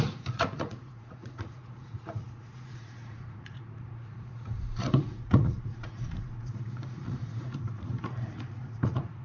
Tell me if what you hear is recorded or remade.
remade